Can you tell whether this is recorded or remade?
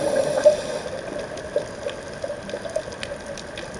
recorded